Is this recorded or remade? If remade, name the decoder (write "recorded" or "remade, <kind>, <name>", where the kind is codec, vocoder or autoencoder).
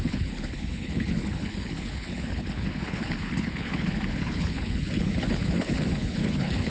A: remade, codec, HILCodec